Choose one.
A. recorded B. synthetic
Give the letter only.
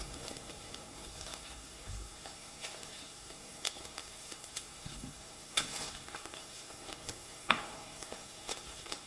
B